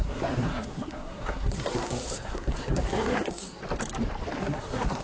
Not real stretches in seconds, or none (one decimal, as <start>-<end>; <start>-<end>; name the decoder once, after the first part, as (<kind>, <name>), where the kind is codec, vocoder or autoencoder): 0.0-3.6 (codec, SNAC); 4.4-5.0